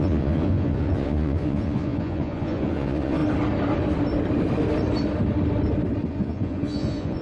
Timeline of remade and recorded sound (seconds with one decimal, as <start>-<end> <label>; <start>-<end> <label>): 0.0-3.2 remade; 3.2-6.1 recorded; 6.1-7.2 remade